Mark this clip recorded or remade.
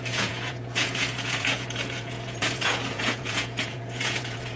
remade